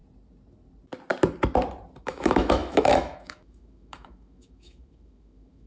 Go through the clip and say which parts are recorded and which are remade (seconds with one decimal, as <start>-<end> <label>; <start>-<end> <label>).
0.0-2.0 recorded; 2.0-5.7 remade